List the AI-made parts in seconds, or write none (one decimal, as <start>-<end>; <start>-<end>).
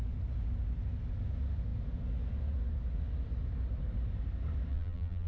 4.7-5.3